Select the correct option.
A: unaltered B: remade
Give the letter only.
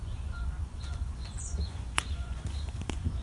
B